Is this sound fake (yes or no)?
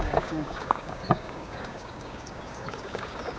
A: yes